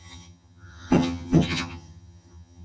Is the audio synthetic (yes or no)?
yes